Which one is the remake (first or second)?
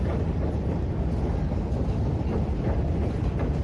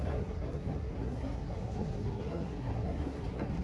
second